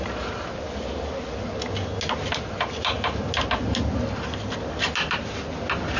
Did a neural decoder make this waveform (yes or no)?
no